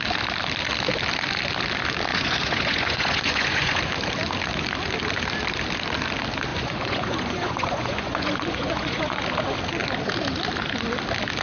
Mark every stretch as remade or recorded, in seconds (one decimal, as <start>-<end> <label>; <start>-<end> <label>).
0.0-2.1 recorded; 2.1-3.8 remade; 3.8-6.5 recorded; 6.5-9.2 remade; 9.2-11.4 recorded